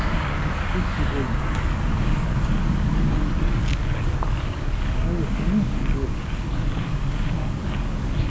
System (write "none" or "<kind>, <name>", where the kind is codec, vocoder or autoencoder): codec, DAC